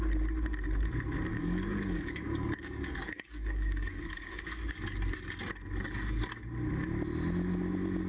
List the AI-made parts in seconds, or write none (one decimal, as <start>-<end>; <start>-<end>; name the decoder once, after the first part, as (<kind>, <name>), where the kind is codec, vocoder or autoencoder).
1.3-4.8 (codec, DAC)